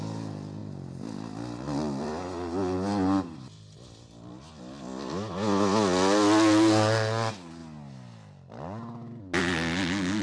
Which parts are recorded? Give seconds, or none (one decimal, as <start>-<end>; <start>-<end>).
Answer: 0.0-10.2